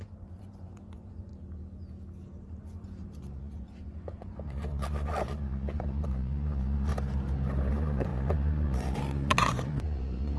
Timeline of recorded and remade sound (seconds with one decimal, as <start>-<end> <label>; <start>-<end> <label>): 0.0-1.3 remade; 1.3-2.6 recorded; 2.6-6.9 remade; 6.9-7.7 recorded; 7.7-10.4 remade